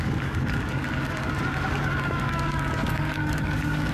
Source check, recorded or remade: remade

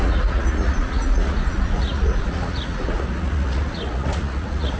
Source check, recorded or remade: remade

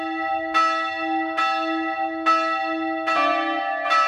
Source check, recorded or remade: recorded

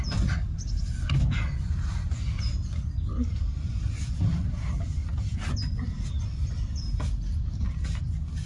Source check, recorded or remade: recorded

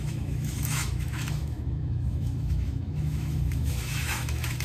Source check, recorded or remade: remade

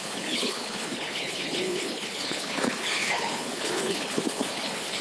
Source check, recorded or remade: remade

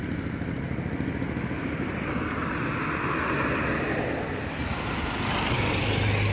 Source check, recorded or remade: recorded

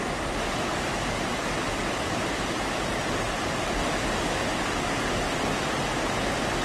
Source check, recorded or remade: recorded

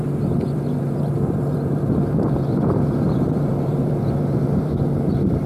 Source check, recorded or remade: remade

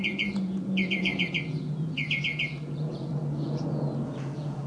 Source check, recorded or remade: remade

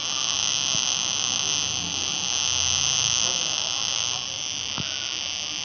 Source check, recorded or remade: recorded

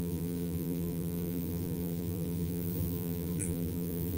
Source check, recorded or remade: remade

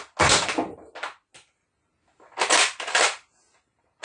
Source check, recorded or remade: recorded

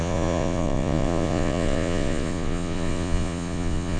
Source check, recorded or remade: remade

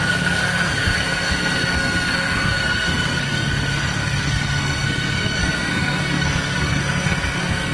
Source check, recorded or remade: remade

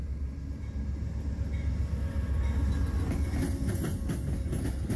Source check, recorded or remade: recorded